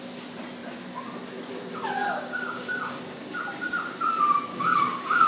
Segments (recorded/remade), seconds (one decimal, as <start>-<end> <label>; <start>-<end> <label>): 0.0-2.0 recorded; 2.0-3.4 remade; 3.4-4.5 recorded; 4.5-5.3 remade